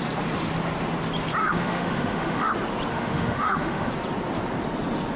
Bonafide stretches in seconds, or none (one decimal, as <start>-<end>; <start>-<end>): 0.0-1.4; 2.5-2.9; 3.9-5.2